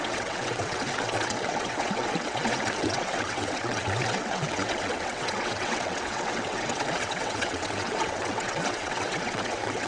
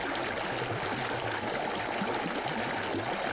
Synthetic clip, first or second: first